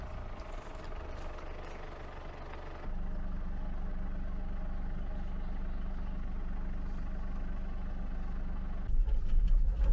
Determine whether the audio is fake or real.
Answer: real